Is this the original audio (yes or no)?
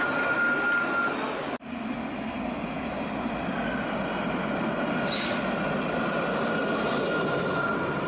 no